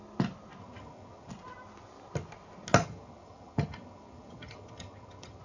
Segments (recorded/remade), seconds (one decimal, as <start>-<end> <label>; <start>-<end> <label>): 0.0-0.6 recorded; 0.6-1.3 remade; 1.3-2.8 recorded; 2.8-5.4 remade

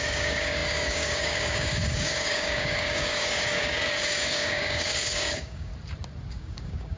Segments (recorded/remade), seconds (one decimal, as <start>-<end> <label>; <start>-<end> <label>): 0.0-5.7 remade; 5.7-6.3 recorded; 6.3-7.0 remade

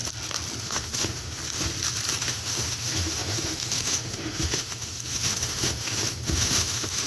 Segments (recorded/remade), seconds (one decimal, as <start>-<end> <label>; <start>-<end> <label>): 0.0-0.6 recorded; 0.6-1.4 remade; 1.4-2.2 recorded; 2.2-7.1 remade

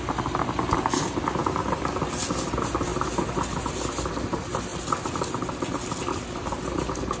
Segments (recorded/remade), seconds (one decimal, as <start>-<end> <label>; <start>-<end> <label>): 0.0-1.4 recorded; 1.4-2.1 remade; 2.1-7.2 recorded

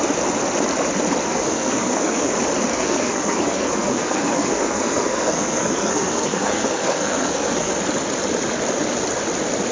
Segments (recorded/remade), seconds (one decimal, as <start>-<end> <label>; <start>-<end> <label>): 0.0-1.3 recorded; 1.3-2.3 remade; 2.3-2.7 recorded; 2.7-7.7 remade; 7.7-9.7 recorded

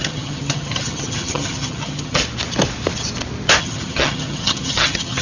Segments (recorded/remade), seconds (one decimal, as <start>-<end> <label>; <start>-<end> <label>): 0.0-2.2 remade; 2.2-3.6 recorded; 3.6-5.2 remade

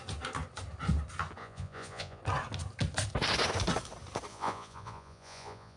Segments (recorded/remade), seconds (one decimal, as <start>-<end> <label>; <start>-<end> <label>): 0.0-1.4 recorded; 1.4-2.2 remade; 2.2-4.3 recorded; 4.3-5.8 remade